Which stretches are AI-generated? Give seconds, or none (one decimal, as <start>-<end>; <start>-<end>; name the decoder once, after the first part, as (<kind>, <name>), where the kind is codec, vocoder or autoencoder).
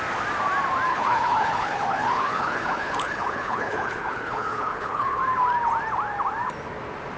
0.9-5.2 (codec, HILCodec)